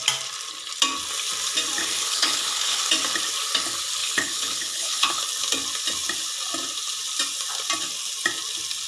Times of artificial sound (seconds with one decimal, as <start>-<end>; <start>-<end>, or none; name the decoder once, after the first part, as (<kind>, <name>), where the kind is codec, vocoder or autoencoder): 1.8-2.8 (codec, HILCodec); 4.0-5.2